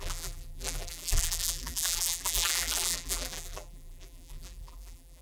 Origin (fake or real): fake